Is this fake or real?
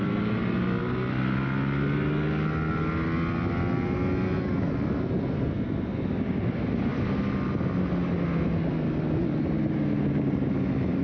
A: real